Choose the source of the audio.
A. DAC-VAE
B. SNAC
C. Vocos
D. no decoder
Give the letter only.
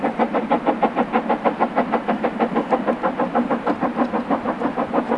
D